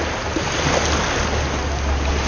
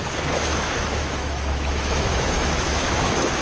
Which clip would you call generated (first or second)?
second